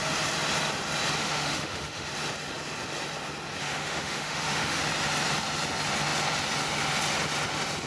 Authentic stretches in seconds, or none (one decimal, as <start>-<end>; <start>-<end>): 0.0-1.2; 2.1-3.6; 4.8-7.9